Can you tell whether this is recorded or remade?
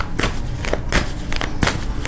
recorded